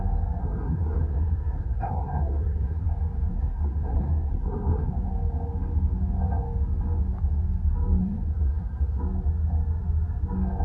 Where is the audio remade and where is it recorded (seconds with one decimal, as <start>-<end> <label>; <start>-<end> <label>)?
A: 0.0-0.4 recorded; 0.4-2.8 remade; 2.8-3.3 recorded; 3.3-4.9 remade; 4.9-8.0 recorded; 8.0-9.0 remade; 9.0-10.6 recorded